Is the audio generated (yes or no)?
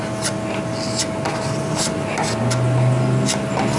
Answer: no